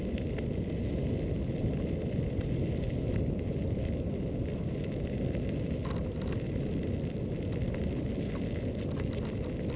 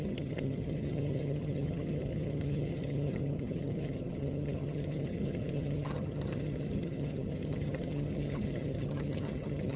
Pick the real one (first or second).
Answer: first